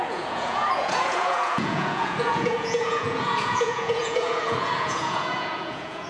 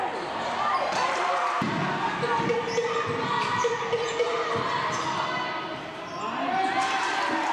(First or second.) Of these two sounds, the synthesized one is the first